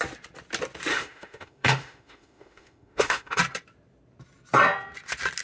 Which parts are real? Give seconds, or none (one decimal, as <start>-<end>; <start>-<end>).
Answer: 0.0-0.9; 3.4-5.4